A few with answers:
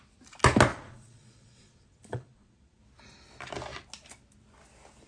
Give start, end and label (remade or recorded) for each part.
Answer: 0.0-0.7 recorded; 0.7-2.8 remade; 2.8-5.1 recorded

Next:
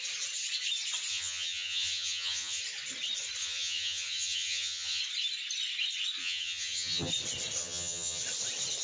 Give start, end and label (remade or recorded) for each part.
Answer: 0.0-1.1 recorded; 1.1-2.6 remade; 2.6-3.4 recorded; 3.4-5.0 remade; 5.0-6.2 recorded; 6.2-7.1 remade; 7.1-7.6 recorded; 7.6-8.2 remade; 8.2-8.8 recorded

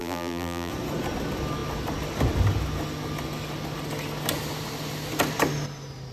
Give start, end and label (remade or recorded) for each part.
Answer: 0.0-0.7 remade; 0.7-6.1 recorded

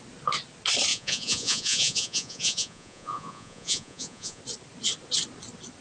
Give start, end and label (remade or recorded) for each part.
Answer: 0.0-0.9 recorded; 0.9-4.4 remade; 4.4-5.8 recorded